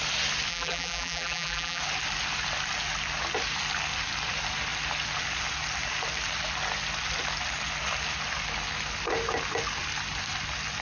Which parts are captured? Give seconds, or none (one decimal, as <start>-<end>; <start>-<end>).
0.0-0.5; 1.8-10.8